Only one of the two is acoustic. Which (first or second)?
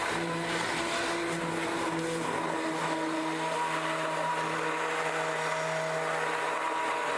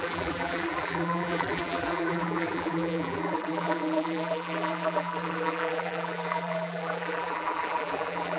first